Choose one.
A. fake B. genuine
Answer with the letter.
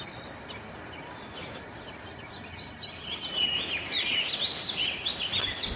B